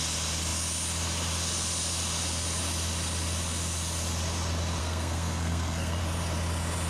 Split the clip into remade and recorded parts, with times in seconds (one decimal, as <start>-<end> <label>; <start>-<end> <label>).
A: 0.0-4.8 recorded; 4.8-6.0 remade; 6.0-6.9 recorded